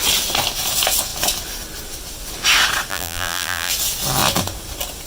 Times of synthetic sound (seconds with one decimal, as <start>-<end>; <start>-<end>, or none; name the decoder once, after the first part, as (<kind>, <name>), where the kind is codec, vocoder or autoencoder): 2.9-3.7 (vocoder, BigVGAN v2)